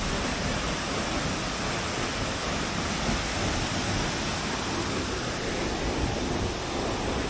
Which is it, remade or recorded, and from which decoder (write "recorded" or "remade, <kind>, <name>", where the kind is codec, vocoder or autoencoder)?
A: recorded